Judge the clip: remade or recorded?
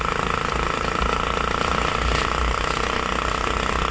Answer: recorded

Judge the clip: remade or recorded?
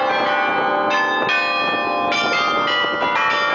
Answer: recorded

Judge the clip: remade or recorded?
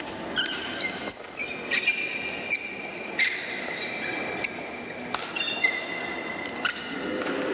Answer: recorded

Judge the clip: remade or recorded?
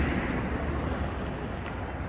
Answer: recorded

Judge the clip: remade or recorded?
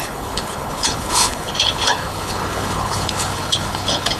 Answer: remade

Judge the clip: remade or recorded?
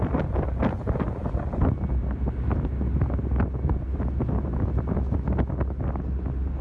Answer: recorded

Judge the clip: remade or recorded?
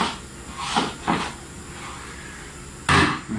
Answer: recorded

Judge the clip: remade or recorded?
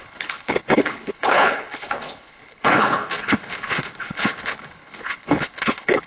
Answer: remade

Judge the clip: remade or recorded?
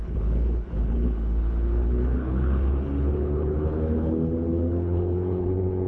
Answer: remade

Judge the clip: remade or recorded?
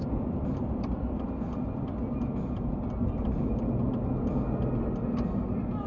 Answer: recorded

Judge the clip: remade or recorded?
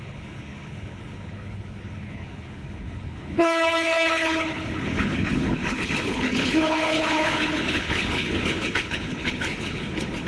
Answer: remade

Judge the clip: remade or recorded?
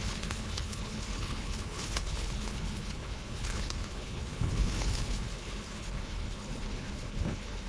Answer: remade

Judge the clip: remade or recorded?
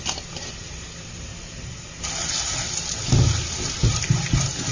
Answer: recorded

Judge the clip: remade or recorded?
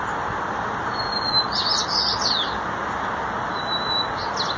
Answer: recorded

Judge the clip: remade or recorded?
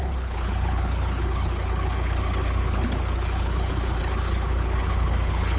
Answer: remade